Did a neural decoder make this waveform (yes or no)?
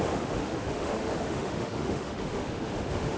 yes